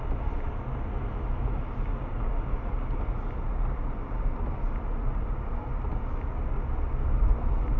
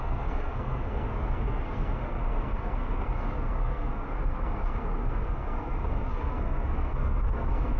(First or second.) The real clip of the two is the first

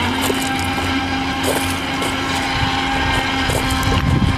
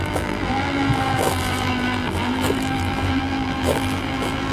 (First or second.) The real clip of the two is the first